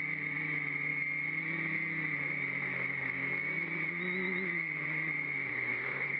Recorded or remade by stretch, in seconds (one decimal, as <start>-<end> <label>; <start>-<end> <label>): 0.0-5.5 recorded; 5.5-6.2 remade